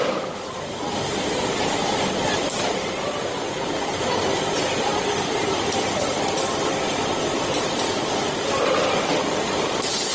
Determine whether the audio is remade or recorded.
recorded